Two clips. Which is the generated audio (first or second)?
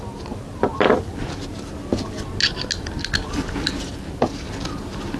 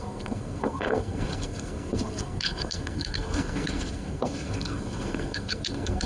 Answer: second